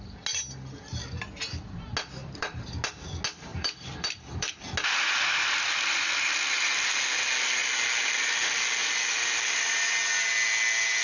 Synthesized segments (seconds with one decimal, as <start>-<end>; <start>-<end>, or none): 2.2-2.8; 3.5-4.6; 8.8-9.8

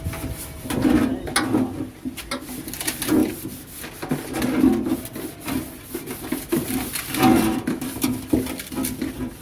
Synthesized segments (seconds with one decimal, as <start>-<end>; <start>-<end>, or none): none

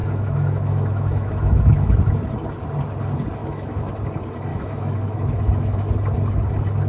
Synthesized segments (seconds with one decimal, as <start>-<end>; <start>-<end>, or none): 0.0-2.0; 3.4-3.9; 4.5-5.9